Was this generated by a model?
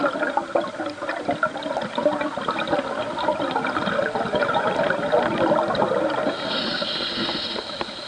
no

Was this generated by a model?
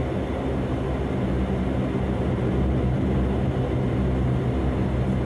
no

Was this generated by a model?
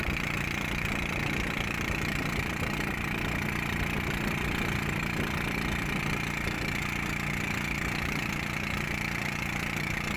no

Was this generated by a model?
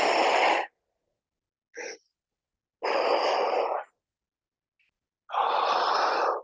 no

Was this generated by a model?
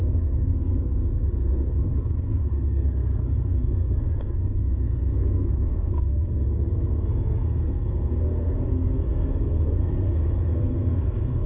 yes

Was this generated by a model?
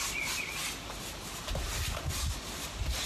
no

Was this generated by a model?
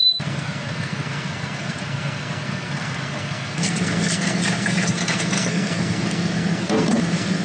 yes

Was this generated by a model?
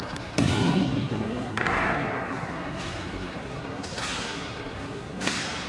yes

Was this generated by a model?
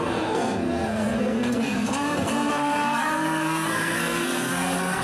yes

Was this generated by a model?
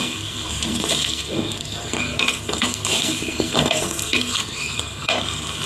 yes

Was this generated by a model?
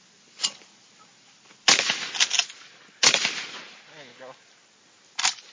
no